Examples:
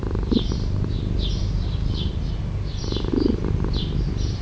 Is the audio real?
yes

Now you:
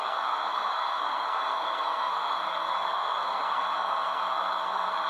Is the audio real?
no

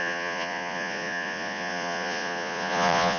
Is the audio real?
no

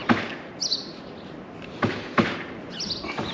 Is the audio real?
yes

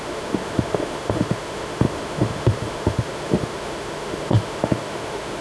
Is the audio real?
no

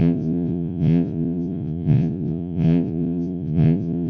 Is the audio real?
no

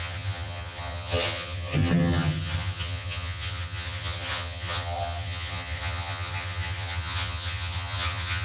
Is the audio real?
no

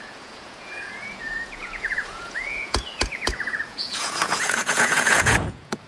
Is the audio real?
no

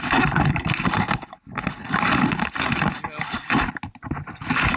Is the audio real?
yes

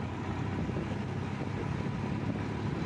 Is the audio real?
yes